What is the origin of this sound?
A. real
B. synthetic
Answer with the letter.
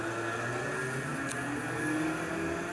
A